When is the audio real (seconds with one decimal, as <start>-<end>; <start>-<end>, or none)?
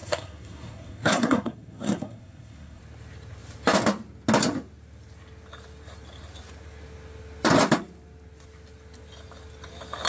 2.8-10.1